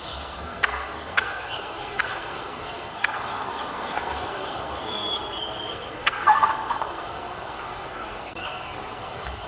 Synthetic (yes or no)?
yes